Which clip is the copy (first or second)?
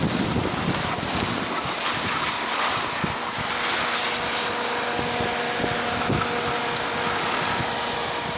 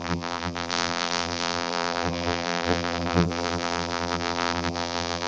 second